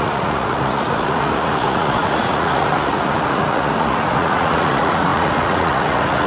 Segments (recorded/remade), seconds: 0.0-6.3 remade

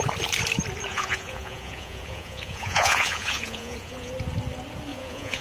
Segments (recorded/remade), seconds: 0.0-0.9 recorded; 0.9-4.1 remade; 4.1-4.9 recorded; 4.9-5.4 remade